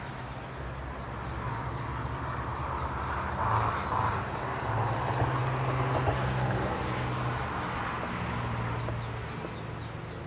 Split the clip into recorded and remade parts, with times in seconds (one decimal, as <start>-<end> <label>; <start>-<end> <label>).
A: 0.0-10.3 recorded